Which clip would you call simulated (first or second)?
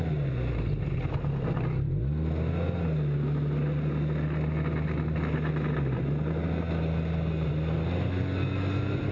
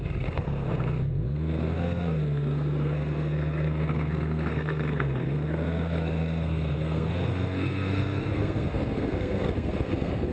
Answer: second